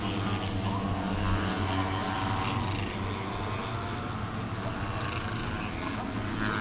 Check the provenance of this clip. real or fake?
real